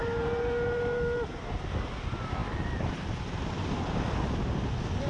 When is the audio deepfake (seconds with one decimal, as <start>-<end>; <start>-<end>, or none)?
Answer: none